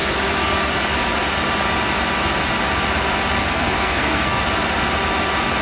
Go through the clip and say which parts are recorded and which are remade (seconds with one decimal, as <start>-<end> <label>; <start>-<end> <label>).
0.0-3.4 recorded; 3.4-4.4 remade; 4.4-5.6 recorded